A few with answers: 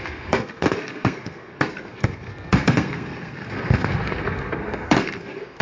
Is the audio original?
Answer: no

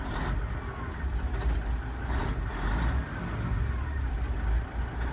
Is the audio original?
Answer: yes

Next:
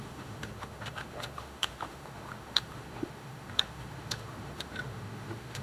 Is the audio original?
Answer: no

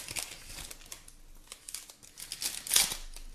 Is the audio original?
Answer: yes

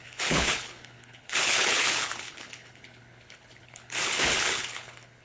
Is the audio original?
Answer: no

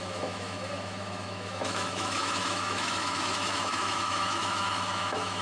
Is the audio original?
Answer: no